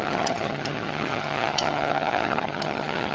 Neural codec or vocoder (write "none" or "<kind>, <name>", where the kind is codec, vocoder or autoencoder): vocoder, HiFi-GAN